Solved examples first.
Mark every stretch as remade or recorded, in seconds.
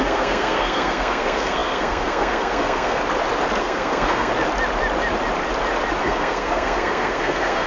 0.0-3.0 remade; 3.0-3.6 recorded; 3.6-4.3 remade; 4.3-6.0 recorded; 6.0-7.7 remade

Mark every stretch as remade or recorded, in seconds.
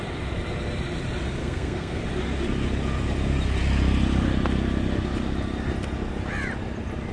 0.0-1.4 recorded; 1.4-2.0 remade; 2.0-7.1 recorded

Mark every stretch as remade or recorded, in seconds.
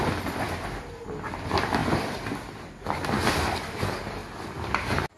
0.0-5.2 recorded